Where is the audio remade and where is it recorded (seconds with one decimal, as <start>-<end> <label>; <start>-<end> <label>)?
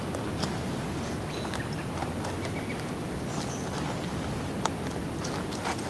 0.0-5.9 recorded